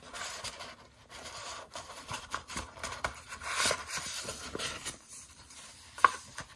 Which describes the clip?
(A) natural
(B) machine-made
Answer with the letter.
B